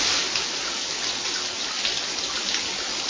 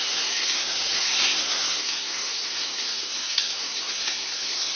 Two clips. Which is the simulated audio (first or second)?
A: second